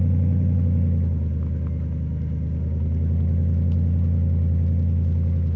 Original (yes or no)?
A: yes